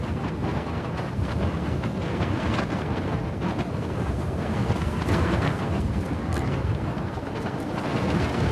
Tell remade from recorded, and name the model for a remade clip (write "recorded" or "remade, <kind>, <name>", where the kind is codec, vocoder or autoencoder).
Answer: remade, codec, SNAC